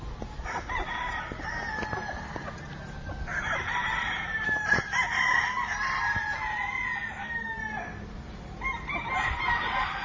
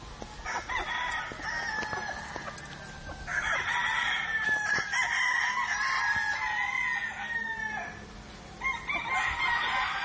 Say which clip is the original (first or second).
second